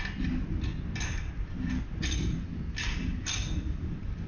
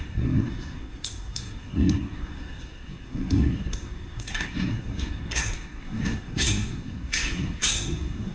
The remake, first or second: second